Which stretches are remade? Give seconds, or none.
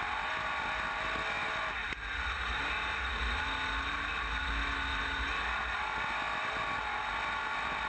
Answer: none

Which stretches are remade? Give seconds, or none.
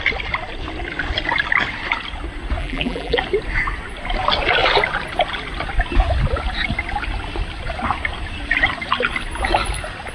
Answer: 2.6-3.2 (vocoder, BigVGAN v2)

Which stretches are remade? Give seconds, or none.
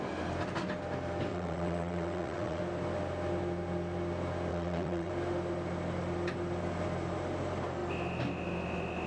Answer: 1.3-2.6 (vocoder, WaveNeXt); 4.5-5.1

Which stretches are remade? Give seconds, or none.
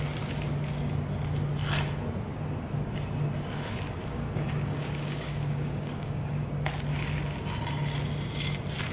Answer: 4.0-6.5 (codec, DAC)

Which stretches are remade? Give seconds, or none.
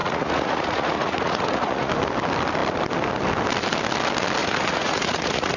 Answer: 0.0-1.9 (vocoder, Vocos); 4.4-5.6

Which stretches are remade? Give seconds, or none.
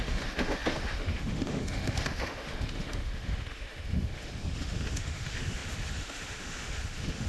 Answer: 0.0-7.3 (autoencoder, DAC-VAE)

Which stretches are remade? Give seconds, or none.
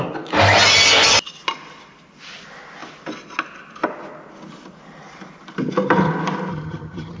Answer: 6.5-7.2 (vocoder, HiFi-GAN)